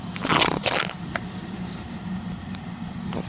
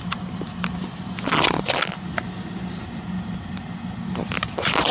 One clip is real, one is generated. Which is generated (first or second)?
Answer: first